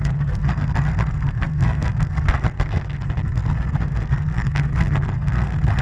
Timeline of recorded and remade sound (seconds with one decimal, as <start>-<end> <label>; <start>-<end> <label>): 0.0-5.8 remade